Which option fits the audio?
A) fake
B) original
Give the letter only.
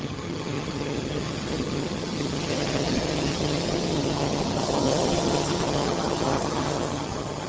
A